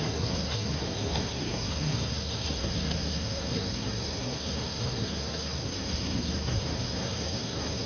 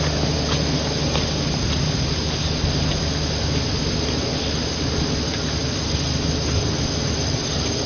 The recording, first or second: second